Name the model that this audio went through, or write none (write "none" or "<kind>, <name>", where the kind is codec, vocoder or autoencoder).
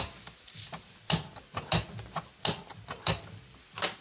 none